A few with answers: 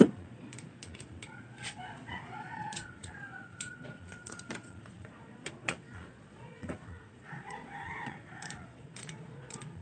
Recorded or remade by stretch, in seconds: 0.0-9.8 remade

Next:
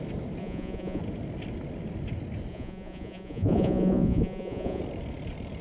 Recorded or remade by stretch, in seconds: 0.0-0.4 recorded; 0.4-1.0 remade; 1.0-2.5 recorded; 2.5-4.8 remade; 4.8-5.6 recorded

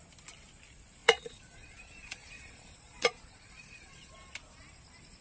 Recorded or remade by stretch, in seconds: 0.0-1.0 recorded; 1.0-4.1 remade; 4.1-5.2 recorded

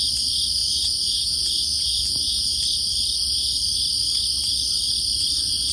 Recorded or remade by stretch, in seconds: 0.0-0.6 recorded; 0.6-2.5 remade; 2.5-5.7 recorded

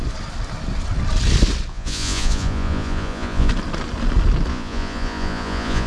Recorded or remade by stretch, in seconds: 0.0-1.7 recorded; 1.7-3.5 remade; 3.5-4.5 recorded; 4.5-5.9 remade

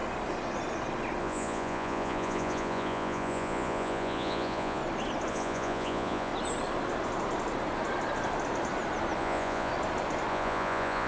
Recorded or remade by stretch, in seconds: 0.0-1.2 recorded; 1.2-4.8 remade; 4.8-5.3 recorded; 5.3-6.3 remade; 6.3-9.2 recorded; 9.2-9.7 remade; 9.7-10.3 recorded; 10.3-11.1 remade

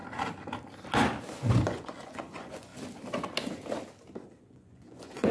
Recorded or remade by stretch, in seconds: 0.0-1.5 recorded; 1.5-2.7 remade; 2.7-4.4 recorded; 4.4-5.3 remade

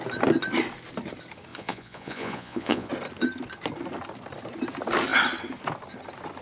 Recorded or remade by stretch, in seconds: 0.0-1.5 recorded; 1.5-2.9 remade; 2.9-6.4 recorded